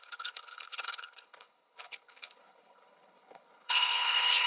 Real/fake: fake